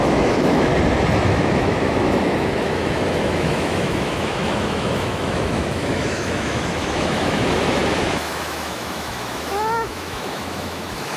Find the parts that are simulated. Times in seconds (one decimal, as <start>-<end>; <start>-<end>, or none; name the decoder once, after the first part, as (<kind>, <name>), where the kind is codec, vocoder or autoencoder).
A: 0.0-0.7 (autoencoder, DAC-VAE); 1.3-11.2